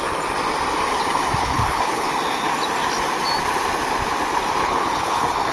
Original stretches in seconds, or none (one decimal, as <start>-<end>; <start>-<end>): 0.0-1.4; 2.1-4.6